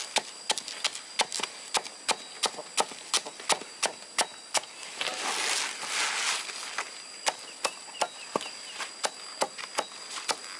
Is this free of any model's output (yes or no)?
yes